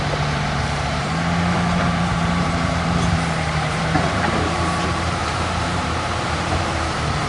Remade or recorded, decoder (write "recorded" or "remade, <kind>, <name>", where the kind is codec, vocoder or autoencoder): remade, vocoder, BigVGAN v2